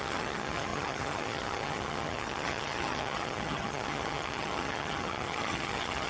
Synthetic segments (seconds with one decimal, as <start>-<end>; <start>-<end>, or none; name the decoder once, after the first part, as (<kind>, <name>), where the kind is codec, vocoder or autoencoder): 0.0-6.1 (vocoder, HiFi-GAN)